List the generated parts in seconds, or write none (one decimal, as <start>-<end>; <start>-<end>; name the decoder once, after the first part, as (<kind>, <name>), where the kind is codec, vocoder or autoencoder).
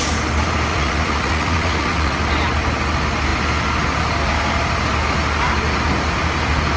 0.7-2.2 (vocoder, Vocos)